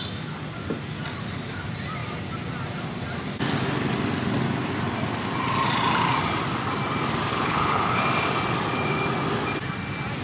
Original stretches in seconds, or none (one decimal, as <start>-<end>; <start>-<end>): 0.0-7.3; 8.0-10.2